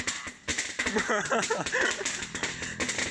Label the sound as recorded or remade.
recorded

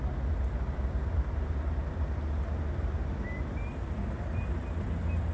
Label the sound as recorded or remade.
recorded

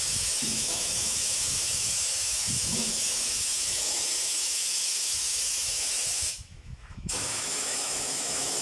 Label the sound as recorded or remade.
remade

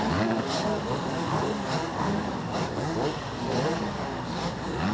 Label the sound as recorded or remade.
remade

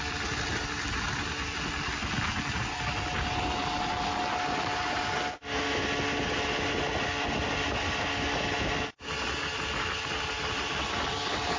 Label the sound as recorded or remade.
recorded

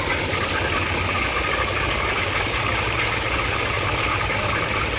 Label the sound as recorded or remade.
recorded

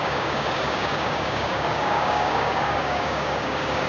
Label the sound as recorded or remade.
remade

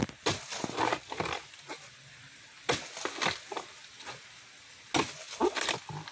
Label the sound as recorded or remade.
recorded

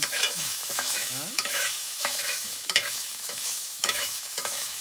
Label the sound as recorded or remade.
remade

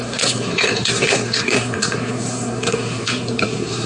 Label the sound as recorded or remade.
remade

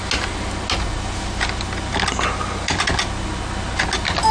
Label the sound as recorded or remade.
recorded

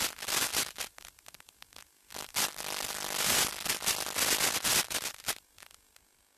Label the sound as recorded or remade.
recorded